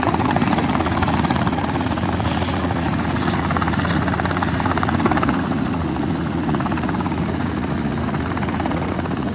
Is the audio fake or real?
fake